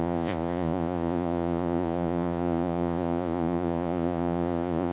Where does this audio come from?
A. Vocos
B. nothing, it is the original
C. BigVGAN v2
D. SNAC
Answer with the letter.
A